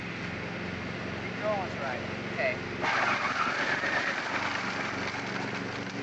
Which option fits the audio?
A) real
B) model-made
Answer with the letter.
A